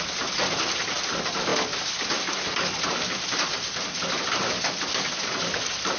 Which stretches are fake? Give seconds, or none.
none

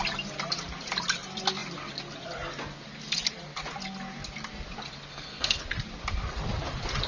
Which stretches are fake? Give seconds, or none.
5.1-5.6 (codec, SNAC)

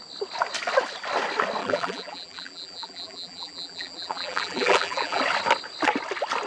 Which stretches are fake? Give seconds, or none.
1.6-5.2 (vocoder, BigVGAN v2)